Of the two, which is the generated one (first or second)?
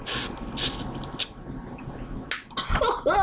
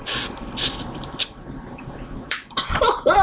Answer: second